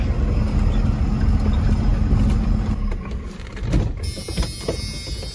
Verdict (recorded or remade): recorded